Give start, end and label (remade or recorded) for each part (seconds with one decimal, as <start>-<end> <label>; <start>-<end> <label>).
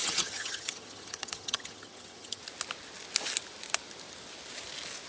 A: 0.0-2.4 remade; 2.4-5.1 recorded